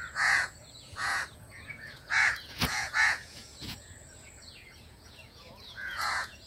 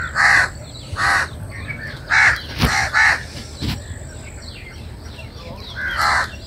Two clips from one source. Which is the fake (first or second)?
first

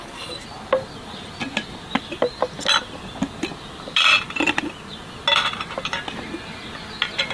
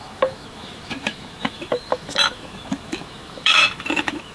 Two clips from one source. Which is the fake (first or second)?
second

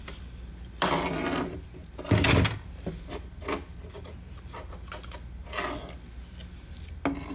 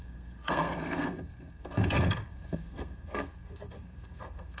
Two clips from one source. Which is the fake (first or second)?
second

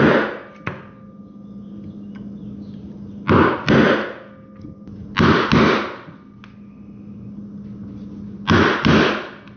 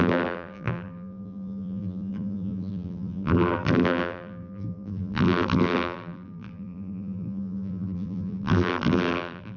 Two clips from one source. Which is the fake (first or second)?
second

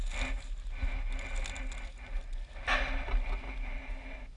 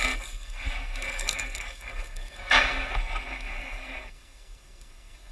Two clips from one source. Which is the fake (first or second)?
second